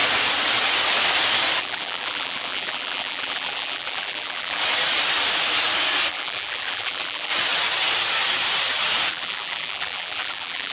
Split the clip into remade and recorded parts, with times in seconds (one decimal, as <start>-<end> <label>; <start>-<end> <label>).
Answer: 0.0-1.6 recorded; 1.6-4.6 remade; 4.6-6.1 recorded; 6.1-7.3 remade; 7.3-9.1 recorded; 9.1-10.7 remade